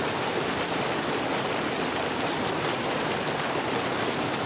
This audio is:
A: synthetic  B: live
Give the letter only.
B